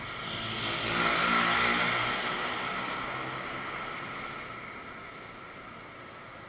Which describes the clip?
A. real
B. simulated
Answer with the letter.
A